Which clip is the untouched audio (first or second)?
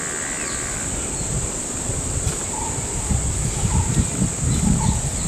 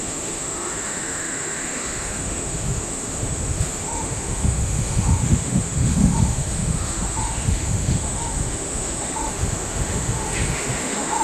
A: first